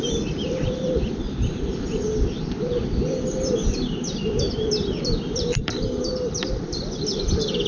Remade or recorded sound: remade